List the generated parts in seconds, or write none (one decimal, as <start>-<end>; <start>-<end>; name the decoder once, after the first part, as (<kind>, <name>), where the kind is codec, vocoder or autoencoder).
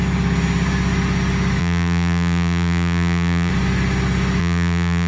1.6-3.5 (vocoder, BigVGAN v2); 4.4-5.1